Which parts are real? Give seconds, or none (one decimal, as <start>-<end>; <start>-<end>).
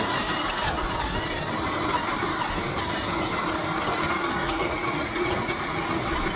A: 0.0-4.4; 5.7-6.4